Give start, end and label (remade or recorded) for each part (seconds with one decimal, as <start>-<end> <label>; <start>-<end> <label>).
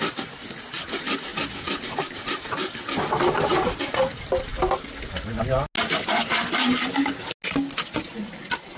0.0-8.8 recorded